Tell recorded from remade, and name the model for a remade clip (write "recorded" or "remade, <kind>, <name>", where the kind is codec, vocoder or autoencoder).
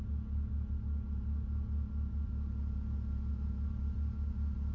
recorded